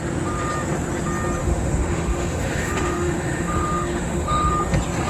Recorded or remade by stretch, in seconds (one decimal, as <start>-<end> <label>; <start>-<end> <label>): 0.0-1.4 recorded; 1.4-4.5 remade; 4.5-5.1 recorded

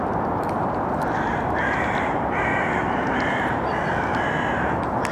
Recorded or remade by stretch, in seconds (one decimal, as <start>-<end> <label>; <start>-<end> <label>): 0.0-0.6 recorded; 0.6-3.7 remade; 3.7-5.1 recorded

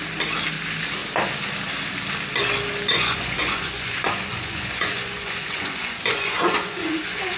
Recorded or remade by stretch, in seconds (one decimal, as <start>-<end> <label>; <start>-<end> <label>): 0.0-2.9 recorded; 2.9-7.4 remade

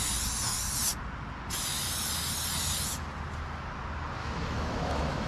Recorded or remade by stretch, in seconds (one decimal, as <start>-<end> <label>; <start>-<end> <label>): 0.0-4.2 recorded; 4.2-5.3 remade

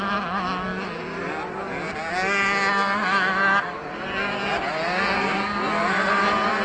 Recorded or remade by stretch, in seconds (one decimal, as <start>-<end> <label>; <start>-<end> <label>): 0.0-6.6 recorded

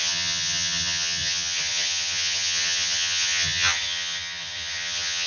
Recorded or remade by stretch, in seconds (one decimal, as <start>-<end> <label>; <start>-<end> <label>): 0.0-5.3 remade

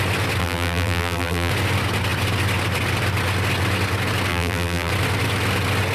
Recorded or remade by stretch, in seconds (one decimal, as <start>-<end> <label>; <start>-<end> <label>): 0.0-0.4 recorded; 0.4-1.5 remade; 1.5-4.3 recorded; 4.3-4.9 remade; 4.9-5.9 recorded